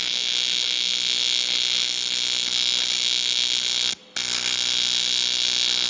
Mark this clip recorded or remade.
recorded